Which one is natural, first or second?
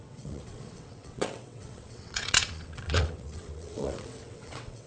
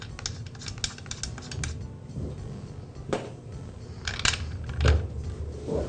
second